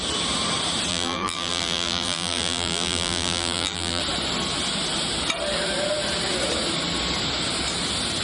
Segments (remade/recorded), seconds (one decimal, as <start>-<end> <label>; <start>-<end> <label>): 0.0-0.9 recorded; 0.9-4.0 remade; 4.0-8.2 recorded